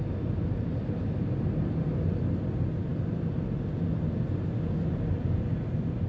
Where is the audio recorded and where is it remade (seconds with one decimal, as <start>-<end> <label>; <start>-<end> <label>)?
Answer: 0.0-6.1 recorded